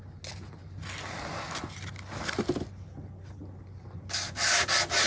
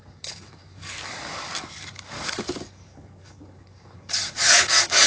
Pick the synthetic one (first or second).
second